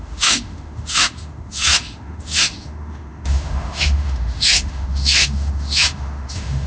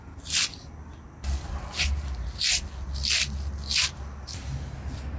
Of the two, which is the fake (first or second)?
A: first